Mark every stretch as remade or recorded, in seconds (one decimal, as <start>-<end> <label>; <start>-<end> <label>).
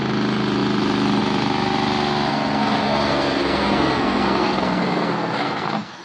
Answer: 0.0-2.3 recorded; 2.3-6.0 remade